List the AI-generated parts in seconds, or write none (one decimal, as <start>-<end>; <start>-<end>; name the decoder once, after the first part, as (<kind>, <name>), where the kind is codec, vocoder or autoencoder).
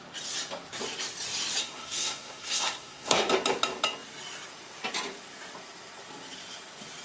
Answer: 1.6-3.3 (codec, SNAC)